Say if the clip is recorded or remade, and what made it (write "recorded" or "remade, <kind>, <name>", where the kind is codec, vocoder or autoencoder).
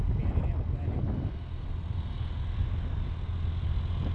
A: recorded